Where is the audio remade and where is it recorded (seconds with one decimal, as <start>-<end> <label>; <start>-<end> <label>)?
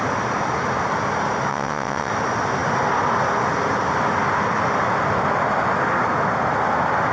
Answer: 0.0-1.5 recorded; 1.5-2.1 remade; 2.1-7.1 recorded